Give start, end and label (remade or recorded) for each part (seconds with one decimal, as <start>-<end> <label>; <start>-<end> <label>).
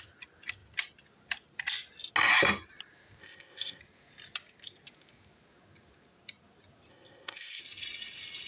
0.0-3.2 recorded; 3.2-3.8 remade; 3.8-6.9 recorded; 6.9-7.6 remade; 7.6-8.5 recorded